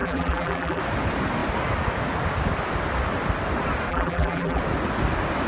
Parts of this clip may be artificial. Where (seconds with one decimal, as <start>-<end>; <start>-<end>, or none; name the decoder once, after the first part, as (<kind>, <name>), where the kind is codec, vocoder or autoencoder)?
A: 0.0-0.8 (vocoder, BigVGAN v2); 3.9-4.6